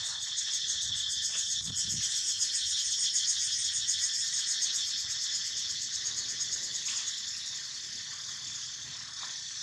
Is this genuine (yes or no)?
yes